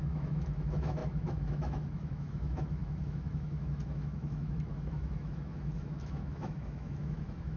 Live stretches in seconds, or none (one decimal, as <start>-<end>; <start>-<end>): none

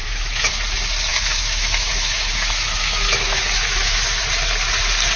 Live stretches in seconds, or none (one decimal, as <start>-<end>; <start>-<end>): 0.5-1.1; 4.2-5.2

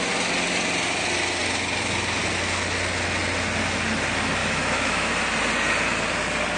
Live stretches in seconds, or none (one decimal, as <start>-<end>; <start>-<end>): 0.0-4.4; 5.1-6.6